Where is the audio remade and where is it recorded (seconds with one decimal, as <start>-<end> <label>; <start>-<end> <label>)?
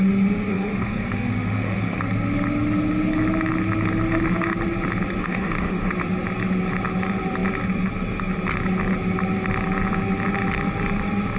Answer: 0.0-0.5 recorded; 0.5-2.0 remade; 2.0-5.2 recorded; 5.2-5.9 remade; 5.9-11.4 recorded